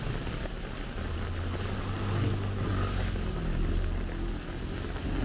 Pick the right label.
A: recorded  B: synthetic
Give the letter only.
A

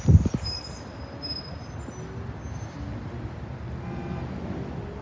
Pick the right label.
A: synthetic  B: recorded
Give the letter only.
B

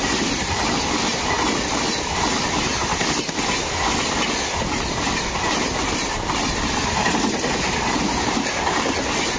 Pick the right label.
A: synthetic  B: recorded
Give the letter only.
B